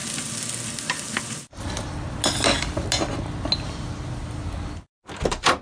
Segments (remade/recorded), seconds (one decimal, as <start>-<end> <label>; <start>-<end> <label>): 0.0-5.6 recorded